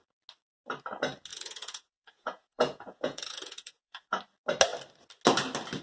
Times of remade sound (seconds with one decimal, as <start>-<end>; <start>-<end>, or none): 1.3-4.2